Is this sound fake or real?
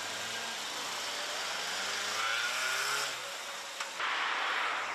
real